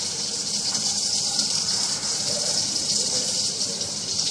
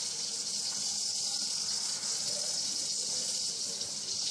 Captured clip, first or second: second